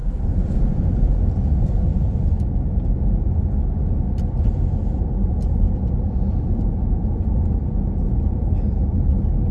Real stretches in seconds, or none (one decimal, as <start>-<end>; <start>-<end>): 0.0-9.5